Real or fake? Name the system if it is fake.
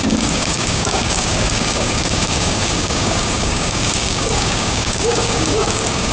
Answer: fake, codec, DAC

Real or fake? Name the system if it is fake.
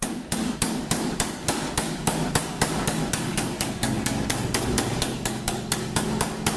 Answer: fake, codec, DAC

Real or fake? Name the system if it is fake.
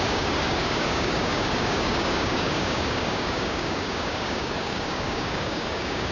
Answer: fake, codec, DAC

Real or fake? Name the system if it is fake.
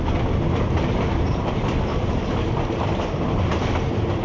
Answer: real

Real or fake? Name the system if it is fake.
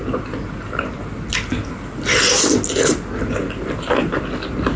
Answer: real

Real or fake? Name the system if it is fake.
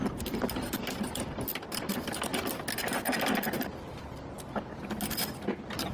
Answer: real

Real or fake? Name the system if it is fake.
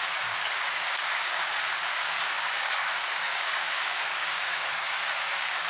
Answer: fake, codec, DAC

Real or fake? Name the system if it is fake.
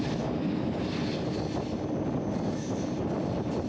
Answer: real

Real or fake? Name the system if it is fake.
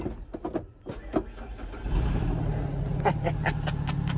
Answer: real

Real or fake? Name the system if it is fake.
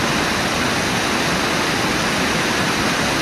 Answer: real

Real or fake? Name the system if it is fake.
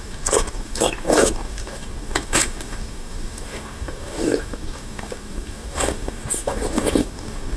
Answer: fake, codec, DAC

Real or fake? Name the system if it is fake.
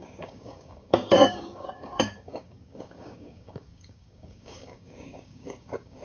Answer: fake, codec, DAC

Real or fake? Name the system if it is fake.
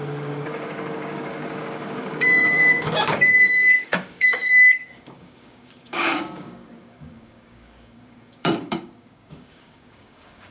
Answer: fake, codec, DAC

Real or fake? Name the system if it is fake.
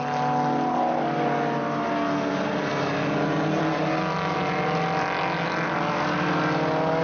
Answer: real